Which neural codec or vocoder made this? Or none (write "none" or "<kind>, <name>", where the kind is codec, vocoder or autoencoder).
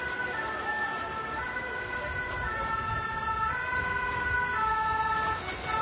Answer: none